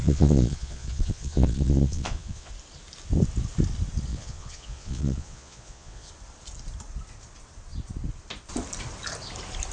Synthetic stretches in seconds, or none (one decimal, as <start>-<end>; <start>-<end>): 0.0-2.5; 4.1-6.1